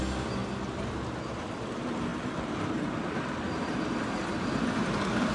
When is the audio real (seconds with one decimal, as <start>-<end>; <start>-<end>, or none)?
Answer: 0.4-1.4